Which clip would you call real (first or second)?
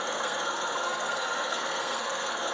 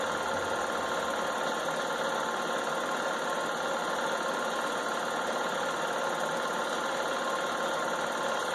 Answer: second